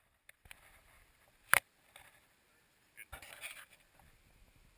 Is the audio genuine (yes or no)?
yes